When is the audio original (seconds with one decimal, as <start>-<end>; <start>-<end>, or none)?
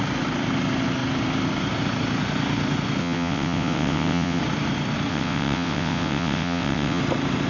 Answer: 0.0-3.0; 4.4-5.1; 7.0-7.5